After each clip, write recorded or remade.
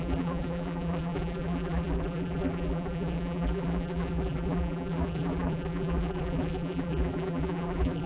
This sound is remade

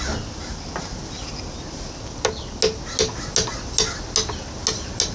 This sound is recorded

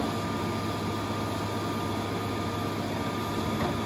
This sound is recorded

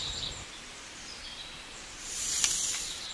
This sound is remade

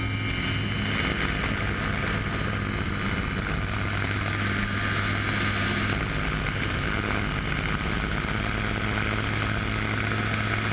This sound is recorded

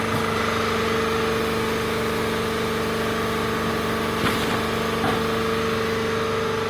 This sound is recorded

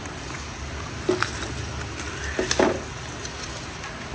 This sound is recorded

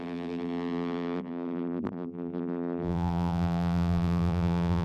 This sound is remade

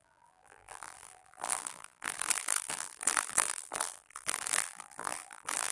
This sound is remade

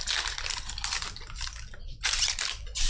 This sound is remade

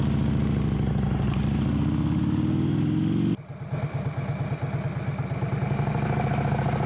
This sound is recorded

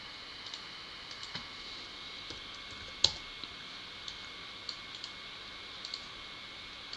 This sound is recorded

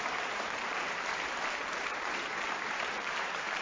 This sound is remade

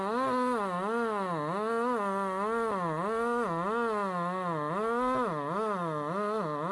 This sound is recorded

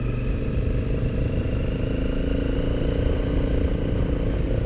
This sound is recorded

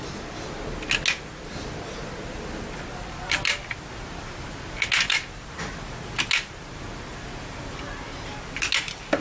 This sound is recorded